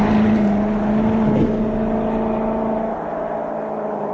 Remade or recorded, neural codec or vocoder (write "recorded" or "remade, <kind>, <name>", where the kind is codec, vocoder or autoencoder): recorded